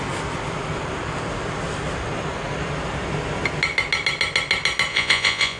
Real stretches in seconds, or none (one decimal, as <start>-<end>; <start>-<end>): 0.0-4.9